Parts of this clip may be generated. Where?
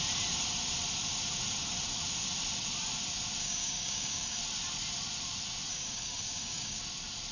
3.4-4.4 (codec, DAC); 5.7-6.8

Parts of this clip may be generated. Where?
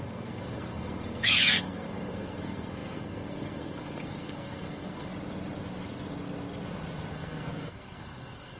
0.0-5.1 (codec, SNAC); 7.1-8.6